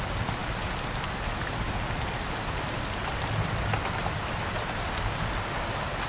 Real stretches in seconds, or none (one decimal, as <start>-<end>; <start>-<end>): 0.0-6.1